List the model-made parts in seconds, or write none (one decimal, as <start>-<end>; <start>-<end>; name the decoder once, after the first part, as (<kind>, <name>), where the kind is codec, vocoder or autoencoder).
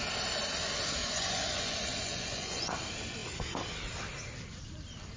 1.0-2.7 (vocoder, Vocos)